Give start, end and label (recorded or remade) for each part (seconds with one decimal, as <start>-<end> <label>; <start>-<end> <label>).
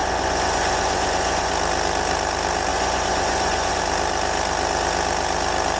0.0-1.5 remade; 1.5-2.7 recorded; 2.7-3.8 remade; 3.8-5.8 recorded